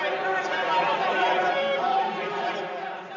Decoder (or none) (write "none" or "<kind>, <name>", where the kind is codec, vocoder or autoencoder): none